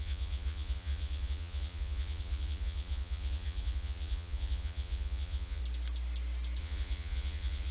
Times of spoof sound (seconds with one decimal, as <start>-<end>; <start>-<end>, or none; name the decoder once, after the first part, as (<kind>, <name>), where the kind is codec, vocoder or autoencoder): 0.0-5.6 (vocoder, Vocos); 6.6-7.7